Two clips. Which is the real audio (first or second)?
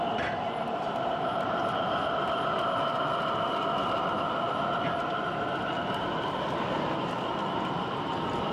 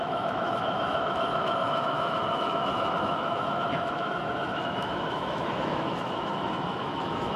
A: first